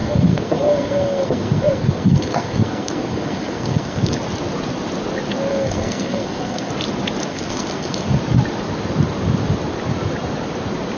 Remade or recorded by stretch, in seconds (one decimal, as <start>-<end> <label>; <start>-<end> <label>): 0.0-4.2 remade; 4.2-5.5 recorded; 5.5-6.7 remade; 6.7-7.3 recorded; 7.3-8.2 remade; 8.2-11.0 recorded